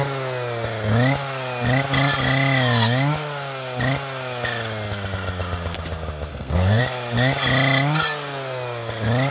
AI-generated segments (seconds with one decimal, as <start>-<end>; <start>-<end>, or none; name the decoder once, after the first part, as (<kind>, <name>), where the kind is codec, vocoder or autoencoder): 6.3-6.8 (codec, SNAC)

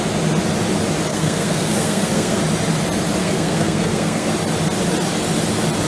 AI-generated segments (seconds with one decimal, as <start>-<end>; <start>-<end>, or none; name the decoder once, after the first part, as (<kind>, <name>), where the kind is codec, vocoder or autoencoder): 1.1-2.4 (codec, SNAC); 3.2-4.3

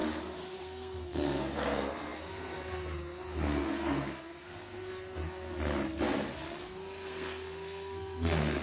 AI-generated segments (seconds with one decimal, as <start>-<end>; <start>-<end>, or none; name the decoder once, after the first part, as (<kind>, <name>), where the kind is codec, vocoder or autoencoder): 0.6-5.5 (codec, SNAC); 6.6-8.6